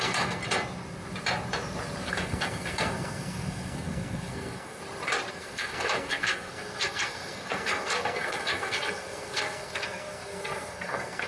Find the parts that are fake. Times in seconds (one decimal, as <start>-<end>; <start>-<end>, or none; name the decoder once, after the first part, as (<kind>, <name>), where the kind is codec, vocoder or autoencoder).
0.0-0.4 (codec, SNAC); 2.1-4.8; 5.3-11.3